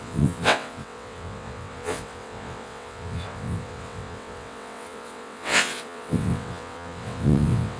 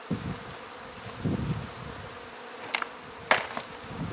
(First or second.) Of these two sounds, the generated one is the first